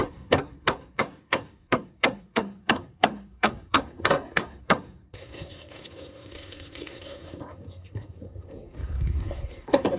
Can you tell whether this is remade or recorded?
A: remade